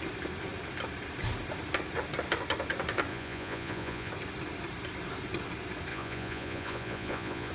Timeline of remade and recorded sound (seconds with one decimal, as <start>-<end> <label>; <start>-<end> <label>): 0.0-3.1 recorded; 3.1-4.1 remade; 4.1-5.9 recorded; 5.9-7.5 remade